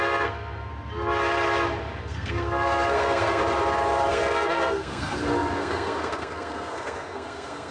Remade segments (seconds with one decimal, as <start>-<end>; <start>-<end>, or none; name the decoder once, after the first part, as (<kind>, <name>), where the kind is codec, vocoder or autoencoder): 0.0-0.7 (codec, SNAC); 2.0-3.4; 4.1-7.7